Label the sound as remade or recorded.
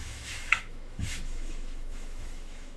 remade